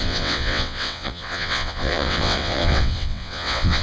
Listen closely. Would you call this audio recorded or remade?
remade